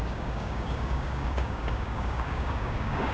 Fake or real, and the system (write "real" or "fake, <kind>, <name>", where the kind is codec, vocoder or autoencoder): fake, codec, DAC